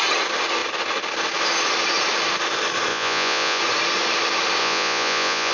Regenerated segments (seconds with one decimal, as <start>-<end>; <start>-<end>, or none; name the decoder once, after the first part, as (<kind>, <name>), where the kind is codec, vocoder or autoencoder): 2.9-3.6 (vocoder, Vocos); 4.6-5.5